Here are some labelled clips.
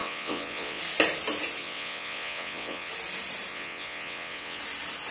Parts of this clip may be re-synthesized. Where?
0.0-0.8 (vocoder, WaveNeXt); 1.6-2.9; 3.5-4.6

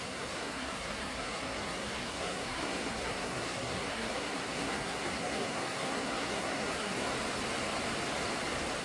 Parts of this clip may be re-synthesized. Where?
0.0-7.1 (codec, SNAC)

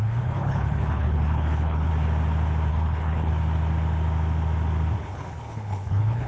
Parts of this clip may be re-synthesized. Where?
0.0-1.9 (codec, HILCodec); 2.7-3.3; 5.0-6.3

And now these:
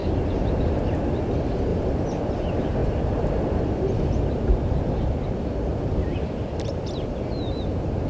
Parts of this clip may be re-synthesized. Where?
1.7-2.3 (vocoder, BigVGAN v2); 5.7-7.5

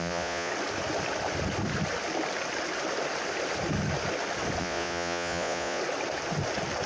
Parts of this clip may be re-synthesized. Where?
0.0-0.5 (vocoder, Vocos); 4.6-5.8